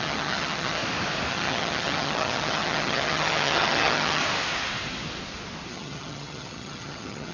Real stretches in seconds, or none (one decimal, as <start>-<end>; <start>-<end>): 0.8-1.3; 4.2-5.7